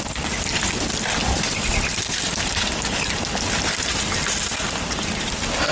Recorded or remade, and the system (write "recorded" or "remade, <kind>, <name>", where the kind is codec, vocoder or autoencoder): recorded